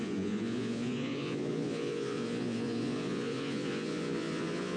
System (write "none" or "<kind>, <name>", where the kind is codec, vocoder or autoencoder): vocoder, Vocos